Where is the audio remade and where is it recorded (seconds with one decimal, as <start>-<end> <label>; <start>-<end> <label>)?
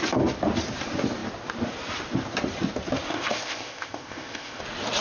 0.0-3.1 recorded; 3.1-4.6 remade; 4.6-5.0 recorded